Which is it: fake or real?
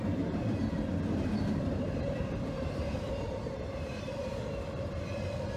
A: fake